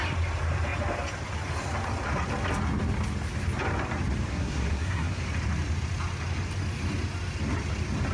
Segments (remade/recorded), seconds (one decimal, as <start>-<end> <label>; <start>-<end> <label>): 0.0-4.3 recorded; 4.3-5.2 remade; 5.2-8.1 recorded